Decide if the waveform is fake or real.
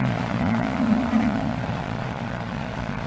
fake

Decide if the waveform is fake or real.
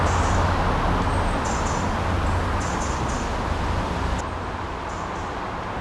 real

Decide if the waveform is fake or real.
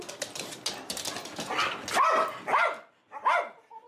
real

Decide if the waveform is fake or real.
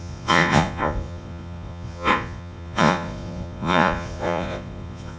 fake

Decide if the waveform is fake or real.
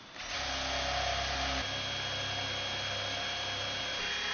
real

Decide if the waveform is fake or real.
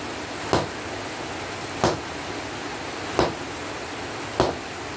real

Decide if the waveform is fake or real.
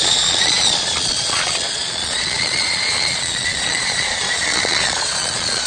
fake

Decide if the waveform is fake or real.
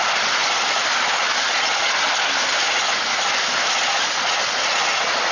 real